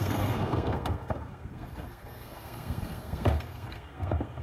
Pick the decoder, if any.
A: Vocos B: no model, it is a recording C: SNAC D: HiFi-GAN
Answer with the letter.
C